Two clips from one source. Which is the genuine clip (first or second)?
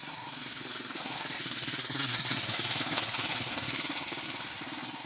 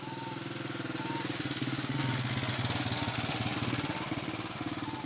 second